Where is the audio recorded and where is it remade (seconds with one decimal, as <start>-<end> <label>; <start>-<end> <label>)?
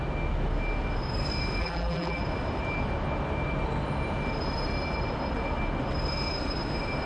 0.0-1.6 recorded; 1.6-2.2 remade; 2.2-7.1 recorded